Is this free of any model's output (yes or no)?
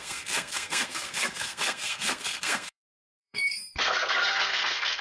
no